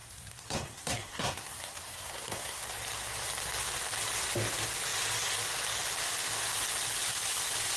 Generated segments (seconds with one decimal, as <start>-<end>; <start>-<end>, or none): 0.0-2.6